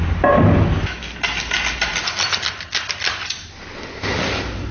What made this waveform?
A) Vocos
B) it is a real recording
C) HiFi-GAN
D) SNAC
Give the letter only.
B